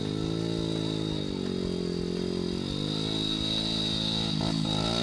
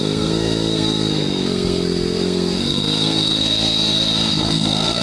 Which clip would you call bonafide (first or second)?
first